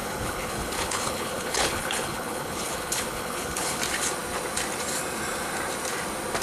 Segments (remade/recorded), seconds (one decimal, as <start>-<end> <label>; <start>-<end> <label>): 0.0-3.8 remade; 3.8-6.4 recorded